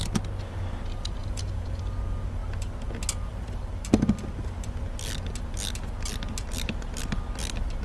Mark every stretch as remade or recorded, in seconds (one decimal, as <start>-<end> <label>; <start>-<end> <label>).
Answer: 0.0-1.2 recorded; 1.2-1.8 remade; 1.8-7.8 recorded